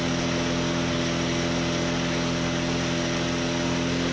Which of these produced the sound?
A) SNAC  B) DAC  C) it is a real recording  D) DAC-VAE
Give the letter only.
C